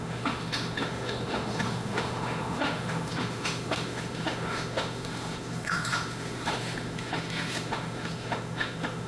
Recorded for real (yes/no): no